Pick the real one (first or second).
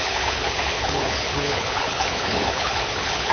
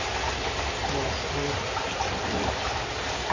second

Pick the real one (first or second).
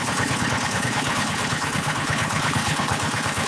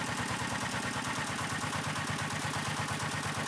second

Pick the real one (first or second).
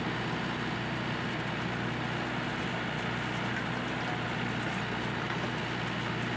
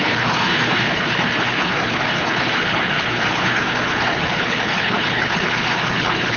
first